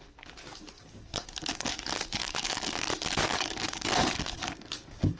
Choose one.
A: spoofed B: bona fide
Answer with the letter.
A